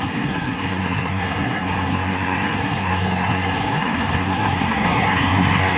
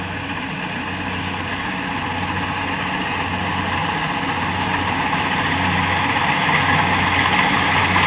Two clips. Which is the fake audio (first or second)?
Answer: first